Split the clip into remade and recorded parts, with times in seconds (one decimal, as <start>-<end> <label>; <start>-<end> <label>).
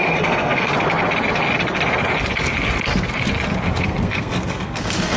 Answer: 0.0-0.7 remade; 0.7-3.8 recorded; 3.8-5.2 remade